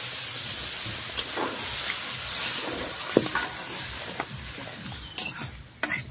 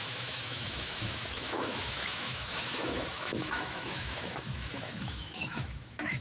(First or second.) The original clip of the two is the first